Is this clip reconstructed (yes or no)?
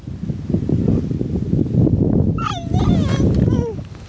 no